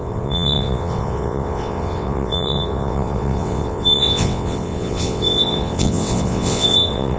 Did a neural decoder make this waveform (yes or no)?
yes